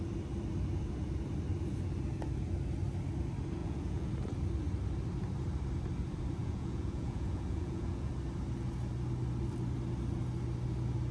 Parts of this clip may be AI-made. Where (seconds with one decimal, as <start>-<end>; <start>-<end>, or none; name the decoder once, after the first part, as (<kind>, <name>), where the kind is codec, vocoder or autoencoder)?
3.6-4.1 (vocoder, Vocos); 6.4-8.1